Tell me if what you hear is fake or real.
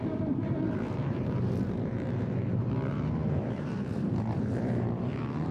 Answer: fake